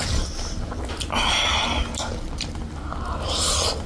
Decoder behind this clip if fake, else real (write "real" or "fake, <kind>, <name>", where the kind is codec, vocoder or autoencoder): real